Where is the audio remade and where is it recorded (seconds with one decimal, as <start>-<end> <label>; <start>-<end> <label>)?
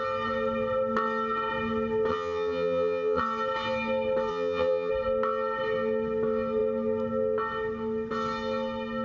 0.0-2.1 recorded; 2.1-3.2 remade; 3.2-4.3 recorded; 4.3-4.9 remade; 4.9-9.0 recorded